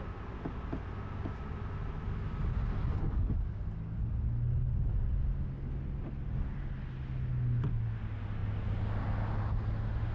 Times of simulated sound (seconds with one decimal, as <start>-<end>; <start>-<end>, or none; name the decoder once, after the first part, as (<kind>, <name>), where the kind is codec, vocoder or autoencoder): 2.7-3.6 (codec, DAC)